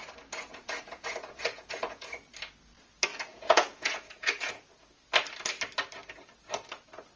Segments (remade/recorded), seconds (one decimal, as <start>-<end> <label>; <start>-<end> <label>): 0.0-0.5 recorded; 0.5-2.3 remade; 2.3-3.1 recorded; 3.1-4.7 remade; 4.7-7.2 recorded